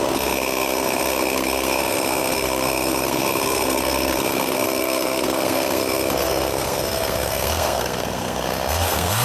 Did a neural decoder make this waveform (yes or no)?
yes